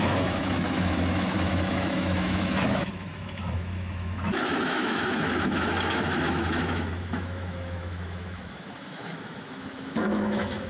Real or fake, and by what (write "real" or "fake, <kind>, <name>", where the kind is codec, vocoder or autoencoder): fake, autoencoder, DAC-VAE